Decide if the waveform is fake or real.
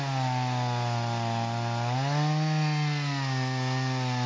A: real